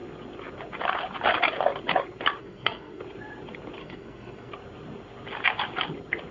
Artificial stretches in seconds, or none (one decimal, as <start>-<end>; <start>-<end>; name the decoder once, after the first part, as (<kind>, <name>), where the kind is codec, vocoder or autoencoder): 2.4-3.0 (codec, SNAC); 3.8-4.5